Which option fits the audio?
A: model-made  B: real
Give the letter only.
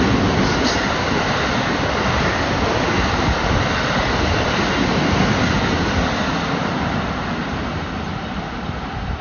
B